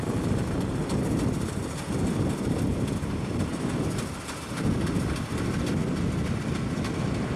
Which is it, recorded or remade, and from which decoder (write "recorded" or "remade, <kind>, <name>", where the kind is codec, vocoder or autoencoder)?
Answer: recorded